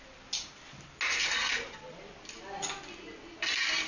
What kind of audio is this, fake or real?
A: real